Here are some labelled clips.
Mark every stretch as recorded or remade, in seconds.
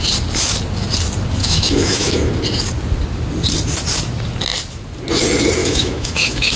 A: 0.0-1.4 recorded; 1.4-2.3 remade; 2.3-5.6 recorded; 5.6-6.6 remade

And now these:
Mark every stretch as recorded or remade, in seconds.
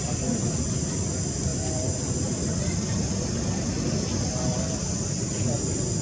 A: 0.0-1.5 recorded; 1.5-3.1 remade; 3.1-6.0 recorded